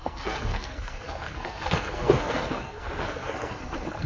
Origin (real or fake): fake